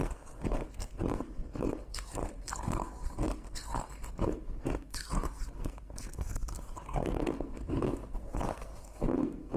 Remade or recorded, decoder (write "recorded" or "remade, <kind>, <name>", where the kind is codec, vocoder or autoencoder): remade, codec, SNAC